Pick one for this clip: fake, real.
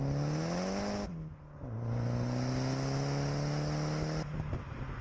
real